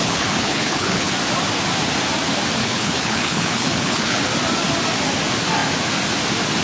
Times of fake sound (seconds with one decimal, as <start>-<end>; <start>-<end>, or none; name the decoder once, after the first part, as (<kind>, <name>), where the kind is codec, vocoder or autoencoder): 0.0-1.1 (codec, HILCodec); 2.6-4.2